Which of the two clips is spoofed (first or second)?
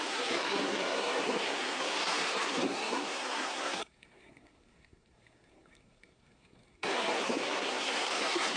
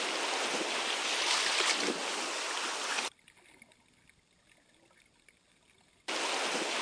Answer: first